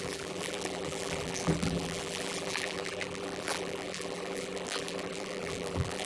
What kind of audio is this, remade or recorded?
remade